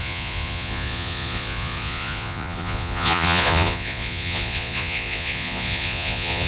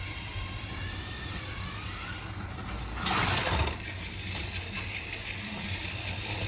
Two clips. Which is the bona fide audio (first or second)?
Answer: second